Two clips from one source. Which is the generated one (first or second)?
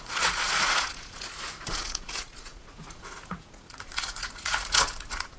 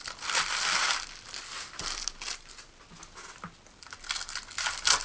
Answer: first